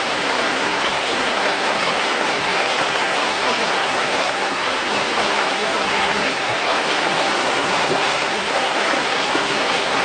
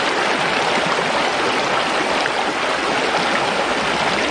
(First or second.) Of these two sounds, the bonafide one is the second